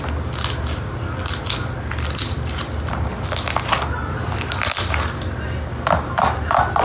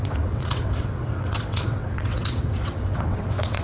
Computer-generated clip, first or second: second